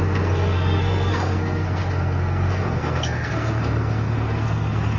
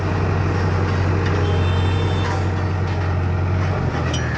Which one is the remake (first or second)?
first